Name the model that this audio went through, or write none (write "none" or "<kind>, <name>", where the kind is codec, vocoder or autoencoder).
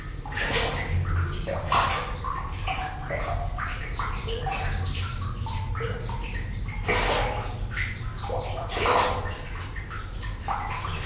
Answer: none